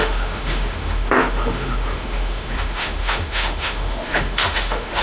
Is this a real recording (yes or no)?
no